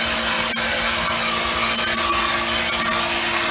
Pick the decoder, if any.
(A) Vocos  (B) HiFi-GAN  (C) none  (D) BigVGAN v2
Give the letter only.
C